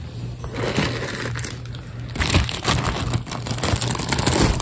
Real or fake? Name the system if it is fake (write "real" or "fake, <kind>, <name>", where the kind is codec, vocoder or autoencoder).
real